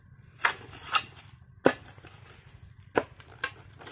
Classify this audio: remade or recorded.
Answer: recorded